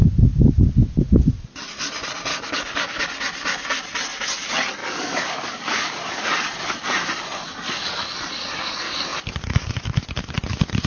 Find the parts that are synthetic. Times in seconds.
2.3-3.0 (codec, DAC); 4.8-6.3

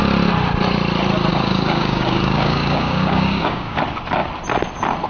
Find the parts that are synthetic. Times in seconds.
1.3-3.8 (codec, DAC)